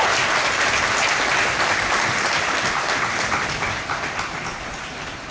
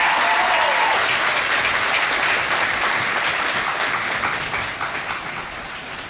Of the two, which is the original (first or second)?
second